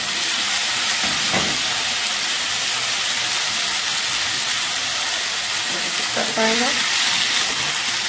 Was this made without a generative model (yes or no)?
yes